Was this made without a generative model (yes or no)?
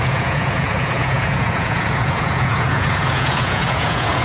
no